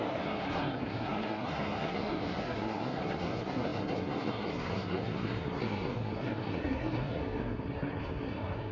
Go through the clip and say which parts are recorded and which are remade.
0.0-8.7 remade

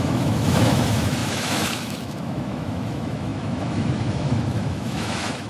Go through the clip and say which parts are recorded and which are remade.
0.0-5.5 remade